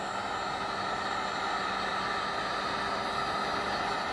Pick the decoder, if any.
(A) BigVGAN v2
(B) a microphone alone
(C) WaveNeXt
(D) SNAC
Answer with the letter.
B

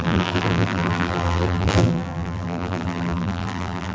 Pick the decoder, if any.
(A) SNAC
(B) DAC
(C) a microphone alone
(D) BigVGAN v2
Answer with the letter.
D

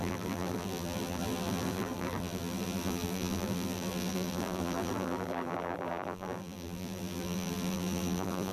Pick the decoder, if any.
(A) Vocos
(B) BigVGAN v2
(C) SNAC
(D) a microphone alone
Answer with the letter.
B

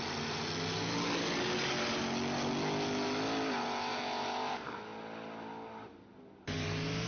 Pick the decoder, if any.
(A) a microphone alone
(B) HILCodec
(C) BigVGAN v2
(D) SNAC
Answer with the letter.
A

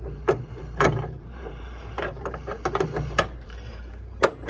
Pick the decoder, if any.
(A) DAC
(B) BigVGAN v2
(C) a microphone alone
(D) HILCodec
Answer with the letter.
B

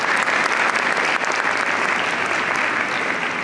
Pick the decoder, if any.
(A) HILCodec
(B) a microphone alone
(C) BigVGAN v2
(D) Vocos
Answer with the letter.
B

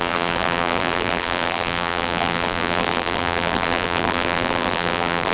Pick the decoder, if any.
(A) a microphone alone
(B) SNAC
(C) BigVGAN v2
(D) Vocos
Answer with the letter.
C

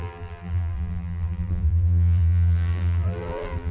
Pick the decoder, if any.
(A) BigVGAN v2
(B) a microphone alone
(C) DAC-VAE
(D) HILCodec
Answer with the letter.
A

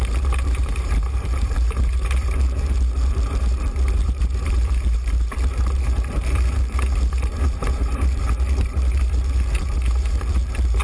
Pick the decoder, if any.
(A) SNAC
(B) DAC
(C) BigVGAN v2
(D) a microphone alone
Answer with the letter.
C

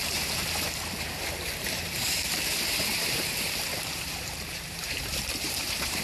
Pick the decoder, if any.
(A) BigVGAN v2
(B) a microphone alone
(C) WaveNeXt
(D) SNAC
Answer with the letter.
A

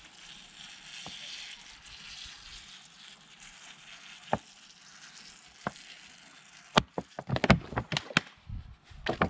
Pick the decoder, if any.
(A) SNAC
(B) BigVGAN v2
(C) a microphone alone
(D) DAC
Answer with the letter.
C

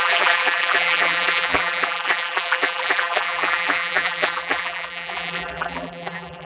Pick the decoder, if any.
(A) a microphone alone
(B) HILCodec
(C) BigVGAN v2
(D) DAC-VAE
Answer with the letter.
C